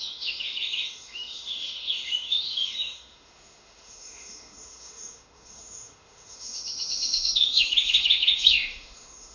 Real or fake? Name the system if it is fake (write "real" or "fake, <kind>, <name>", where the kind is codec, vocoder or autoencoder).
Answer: fake, autoencoder, DAC-VAE